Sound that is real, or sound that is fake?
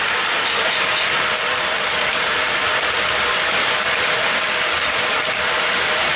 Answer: fake